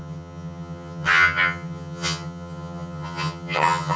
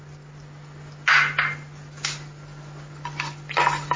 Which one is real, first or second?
second